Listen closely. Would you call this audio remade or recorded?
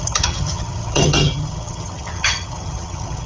remade